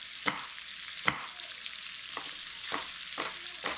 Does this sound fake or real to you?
real